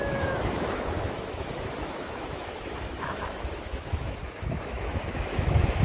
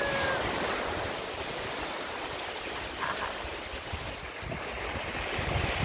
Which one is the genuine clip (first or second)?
second